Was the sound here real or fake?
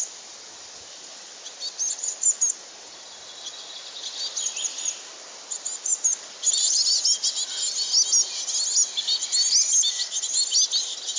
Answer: real